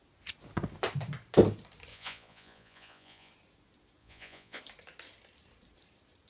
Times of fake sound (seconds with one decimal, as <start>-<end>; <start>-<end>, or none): 1.9-3.3; 4.0-4.6